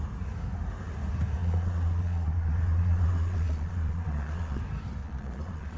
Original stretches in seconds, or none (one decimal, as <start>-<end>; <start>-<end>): 0.0-1.4; 4.6-5.0